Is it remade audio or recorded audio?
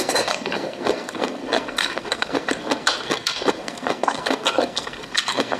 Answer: remade